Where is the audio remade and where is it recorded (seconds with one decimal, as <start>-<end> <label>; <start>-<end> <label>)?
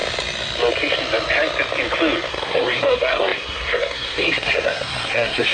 0.0-2.3 recorded; 2.3-5.5 remade